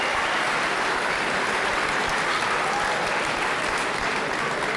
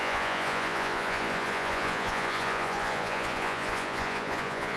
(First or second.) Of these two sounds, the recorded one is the first